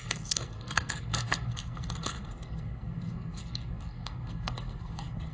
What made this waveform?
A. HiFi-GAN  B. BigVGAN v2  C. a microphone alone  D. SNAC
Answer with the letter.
D